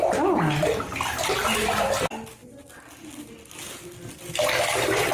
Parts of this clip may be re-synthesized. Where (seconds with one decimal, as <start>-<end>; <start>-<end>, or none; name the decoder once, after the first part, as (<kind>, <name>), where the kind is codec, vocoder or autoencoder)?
none

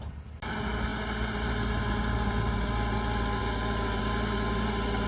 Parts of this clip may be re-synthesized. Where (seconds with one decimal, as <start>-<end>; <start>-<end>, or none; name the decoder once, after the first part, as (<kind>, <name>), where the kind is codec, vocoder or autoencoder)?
none

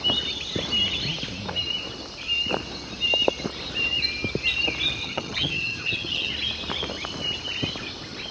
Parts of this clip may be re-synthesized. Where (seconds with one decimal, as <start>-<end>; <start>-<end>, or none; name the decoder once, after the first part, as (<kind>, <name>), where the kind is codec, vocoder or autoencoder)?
5.0-6.3 (vocoder, HiFi-GAN)

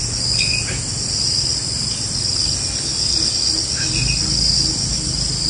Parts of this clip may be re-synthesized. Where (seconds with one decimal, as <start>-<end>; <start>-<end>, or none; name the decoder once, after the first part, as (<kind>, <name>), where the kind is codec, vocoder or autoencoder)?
none

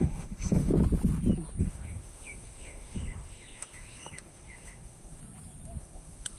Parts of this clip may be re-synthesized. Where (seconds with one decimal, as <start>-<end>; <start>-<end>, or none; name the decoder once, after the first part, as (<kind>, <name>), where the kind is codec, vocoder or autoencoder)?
0.0-0.7 (autoencoder, DAC-VAE); 1.6-5.2; 5.8-6.4